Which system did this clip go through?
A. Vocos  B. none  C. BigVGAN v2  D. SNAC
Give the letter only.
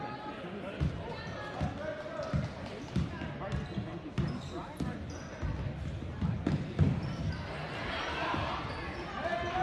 B